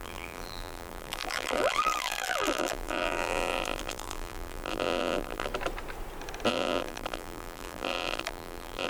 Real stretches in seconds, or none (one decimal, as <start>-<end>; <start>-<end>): 5.5-6.5